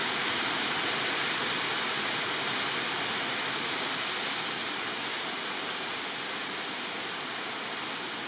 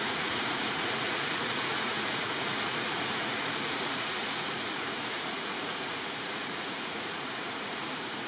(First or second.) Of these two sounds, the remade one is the second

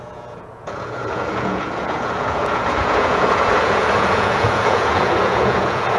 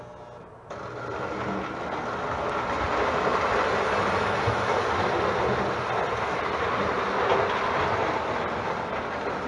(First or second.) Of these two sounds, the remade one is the first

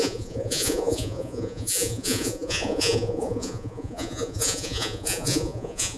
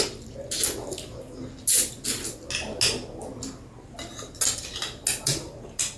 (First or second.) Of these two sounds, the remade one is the first